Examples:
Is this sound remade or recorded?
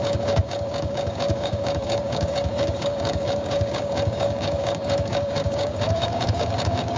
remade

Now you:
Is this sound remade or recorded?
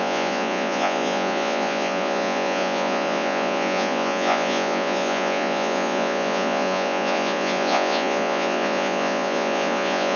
remade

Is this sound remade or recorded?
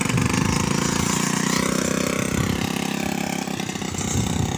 recorded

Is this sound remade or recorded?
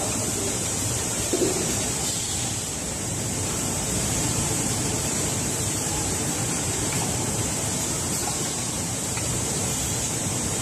remade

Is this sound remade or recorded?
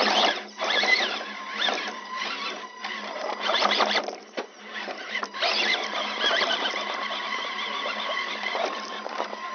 remade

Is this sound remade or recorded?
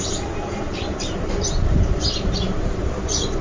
remade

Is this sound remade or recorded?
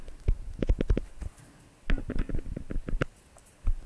recorded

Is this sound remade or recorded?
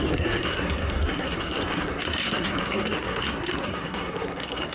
remade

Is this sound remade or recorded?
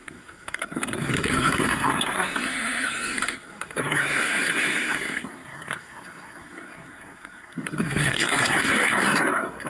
remade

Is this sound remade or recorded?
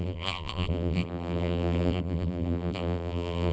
remade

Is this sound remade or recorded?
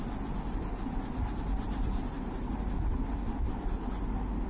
recorded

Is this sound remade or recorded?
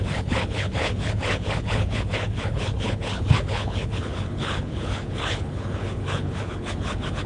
remade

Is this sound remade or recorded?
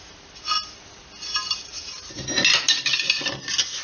recorded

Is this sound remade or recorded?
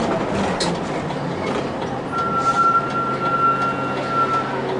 recorded